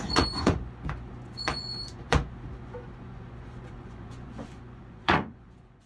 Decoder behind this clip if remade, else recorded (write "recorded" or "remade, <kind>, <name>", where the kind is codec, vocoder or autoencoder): remade, vocoder, Vocos